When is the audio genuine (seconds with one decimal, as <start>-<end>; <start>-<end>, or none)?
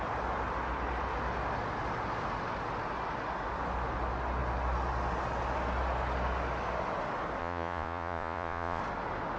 0.0-7.4; 8.8-9.4